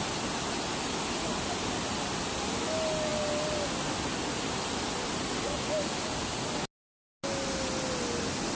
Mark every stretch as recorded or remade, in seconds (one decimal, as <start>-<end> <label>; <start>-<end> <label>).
0.0-8.5 recorded